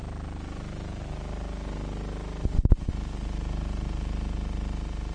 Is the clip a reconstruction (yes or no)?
no